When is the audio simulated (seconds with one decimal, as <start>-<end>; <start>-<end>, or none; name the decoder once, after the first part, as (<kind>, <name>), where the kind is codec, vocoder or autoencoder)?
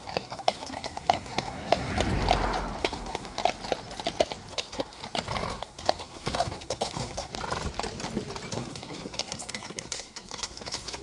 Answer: 0.0-1.9 (codec, SNAC); 2.8-3.4; 4.5-5.0; 5.5-7.3; 8.5-11.0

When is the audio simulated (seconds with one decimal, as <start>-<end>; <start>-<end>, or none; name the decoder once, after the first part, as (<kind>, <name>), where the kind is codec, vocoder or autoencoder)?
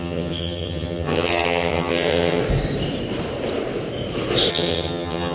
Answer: 0.0-2.4 (vocoder, HiFi-GAN); 4.5-5.3